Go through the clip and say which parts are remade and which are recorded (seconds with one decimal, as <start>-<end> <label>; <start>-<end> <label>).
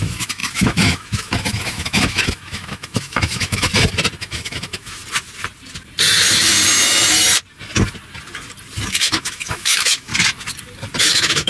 0.0-3.7 remade; 3.7-4.2 recorded; 4.2-5.0 remade; 5.0-8.9 recorded; 8.9-10.1 remade; 10.1-11.0 recorded; 11.0-11.5 remade